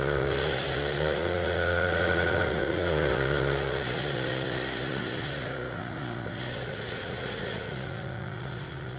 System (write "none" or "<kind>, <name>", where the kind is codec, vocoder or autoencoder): vocoder, Vocos